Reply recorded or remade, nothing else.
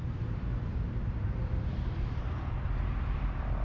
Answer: remade